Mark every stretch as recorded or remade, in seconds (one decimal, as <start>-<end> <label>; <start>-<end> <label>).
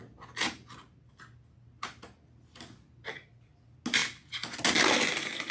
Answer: 0.0-5.5 recorded